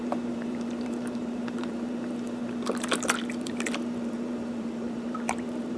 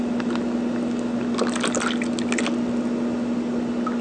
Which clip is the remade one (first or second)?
first